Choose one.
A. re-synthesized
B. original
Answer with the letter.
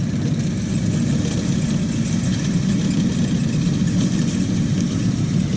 B